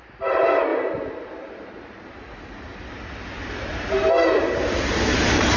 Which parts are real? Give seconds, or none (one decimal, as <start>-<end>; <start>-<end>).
0.0-5.6